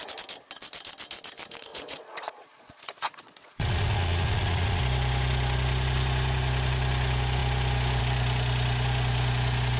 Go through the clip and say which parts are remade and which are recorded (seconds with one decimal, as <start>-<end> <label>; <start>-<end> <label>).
0.0-1.7 recorded; 1.7-4.8 remade; 4.8-9.8 recorded